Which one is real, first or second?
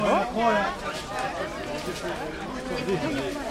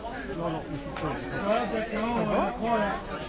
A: first